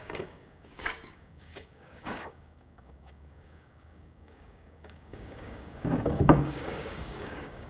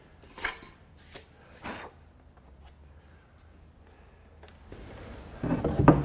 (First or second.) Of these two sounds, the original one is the second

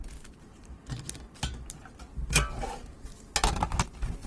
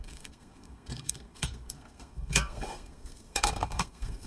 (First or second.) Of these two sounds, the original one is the first